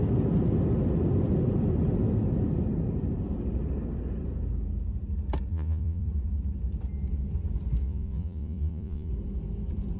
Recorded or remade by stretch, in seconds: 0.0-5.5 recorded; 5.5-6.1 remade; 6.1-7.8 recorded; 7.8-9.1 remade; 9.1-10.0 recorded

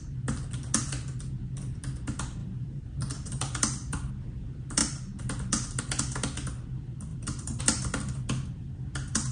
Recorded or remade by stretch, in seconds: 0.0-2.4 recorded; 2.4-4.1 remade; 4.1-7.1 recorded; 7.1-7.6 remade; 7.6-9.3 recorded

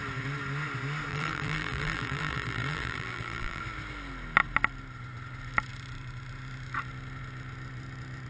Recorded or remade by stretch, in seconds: 0.0-1.1 recorded; 1.1-3.6 remade; 3.6-8.3 recorded